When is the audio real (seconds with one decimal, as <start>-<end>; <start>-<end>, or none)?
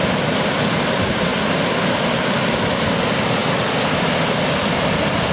0.0-5.3